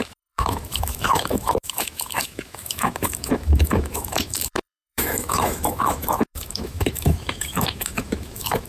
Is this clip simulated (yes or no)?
yes